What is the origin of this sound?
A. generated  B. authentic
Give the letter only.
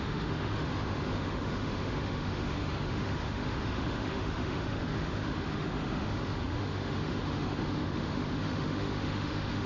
A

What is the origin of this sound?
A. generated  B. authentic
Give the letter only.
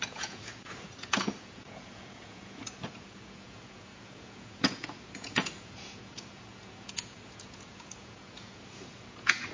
A